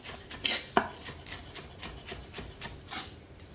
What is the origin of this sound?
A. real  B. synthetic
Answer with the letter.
A